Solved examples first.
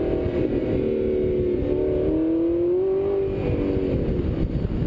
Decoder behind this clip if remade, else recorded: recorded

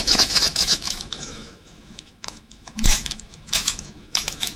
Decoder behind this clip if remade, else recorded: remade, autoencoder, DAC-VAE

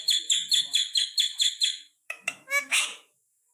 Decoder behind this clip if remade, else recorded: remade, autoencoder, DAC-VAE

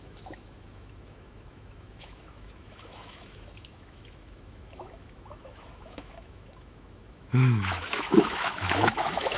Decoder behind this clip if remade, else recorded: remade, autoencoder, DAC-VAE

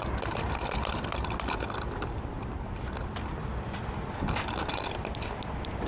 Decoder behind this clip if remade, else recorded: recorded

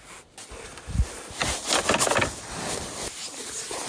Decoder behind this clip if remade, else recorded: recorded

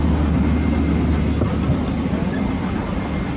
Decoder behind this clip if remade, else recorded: recorded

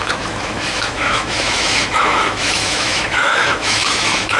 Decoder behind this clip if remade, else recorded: remade, autoencoder, DAC-VAE